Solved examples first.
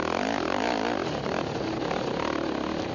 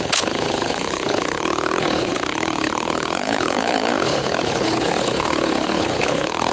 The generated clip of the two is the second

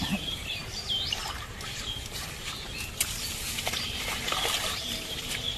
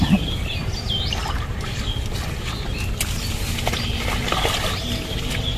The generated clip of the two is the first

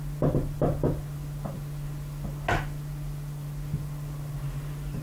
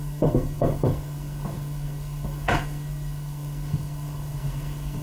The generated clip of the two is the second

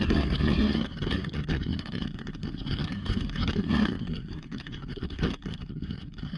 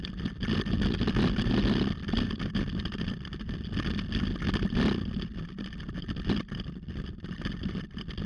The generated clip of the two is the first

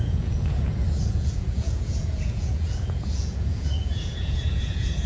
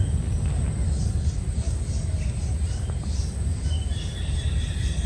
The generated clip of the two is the first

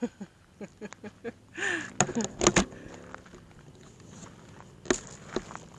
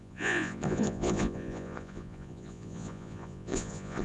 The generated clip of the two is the second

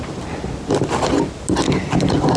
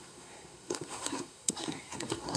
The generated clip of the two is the second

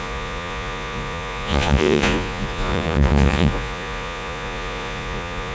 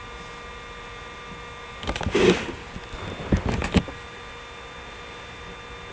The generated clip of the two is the first